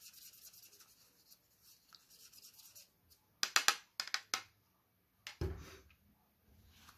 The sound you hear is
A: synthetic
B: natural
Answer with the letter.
B